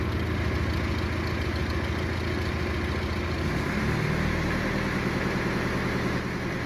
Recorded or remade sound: recorded